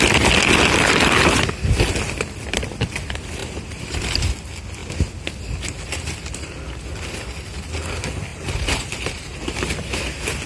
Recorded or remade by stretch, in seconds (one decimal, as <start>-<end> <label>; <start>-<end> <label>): 0.0-3.4 recorded; 3.4-4.0 remade; 4.0-8.3 recorded; 8.3-9.4 remade; 9.4-10.5 recorded